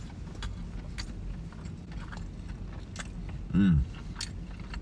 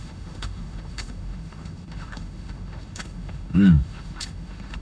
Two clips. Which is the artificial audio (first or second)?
second